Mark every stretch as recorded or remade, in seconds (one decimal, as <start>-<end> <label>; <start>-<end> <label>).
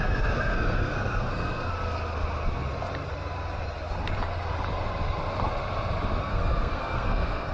0.0-1.7 remade; 1.7-6.2 recorded; 6.2-7.5 remade